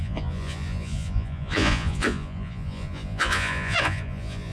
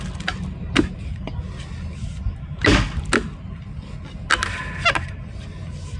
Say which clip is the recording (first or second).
second